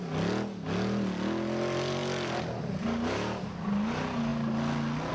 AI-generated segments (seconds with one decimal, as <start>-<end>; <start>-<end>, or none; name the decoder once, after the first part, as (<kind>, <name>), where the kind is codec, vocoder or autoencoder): none